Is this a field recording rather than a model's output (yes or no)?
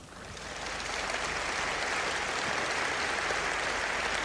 yes